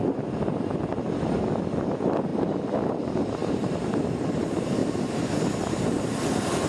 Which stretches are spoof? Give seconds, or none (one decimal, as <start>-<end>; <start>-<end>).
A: 3.4-3.9; 4.8-6.2